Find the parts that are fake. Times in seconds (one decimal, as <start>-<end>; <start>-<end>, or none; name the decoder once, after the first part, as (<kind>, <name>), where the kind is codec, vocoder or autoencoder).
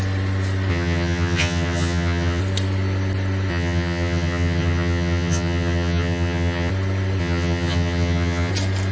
0.7-2.4 (vocoder, HiFi-GAN); 3.5-6.7; 7.2-8.5